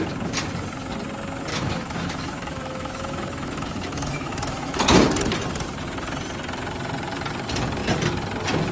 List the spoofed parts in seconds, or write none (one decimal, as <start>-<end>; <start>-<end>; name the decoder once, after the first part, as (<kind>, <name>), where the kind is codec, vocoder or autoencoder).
1.5-4.8 (autoencoder, DAC-VAE)